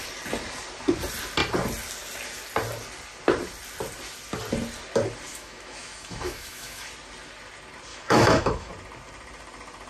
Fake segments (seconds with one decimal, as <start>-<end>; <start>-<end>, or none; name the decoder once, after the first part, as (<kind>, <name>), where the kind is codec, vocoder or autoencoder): 5.3-6.9 (autoencoder, DAC-VAE); 7.9-8.7